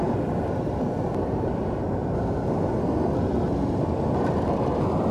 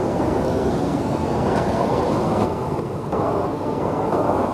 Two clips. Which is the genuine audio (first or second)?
first